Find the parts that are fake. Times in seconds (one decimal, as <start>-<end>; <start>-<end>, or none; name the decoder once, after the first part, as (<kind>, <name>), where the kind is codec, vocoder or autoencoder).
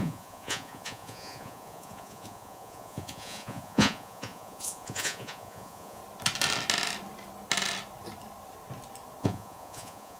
0.0-6.0 (vocoder, Vocos); 9.2-10.2